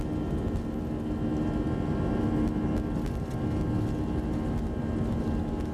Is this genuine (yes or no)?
yes